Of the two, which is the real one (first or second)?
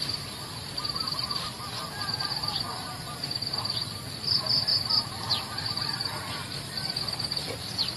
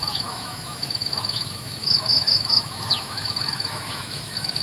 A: first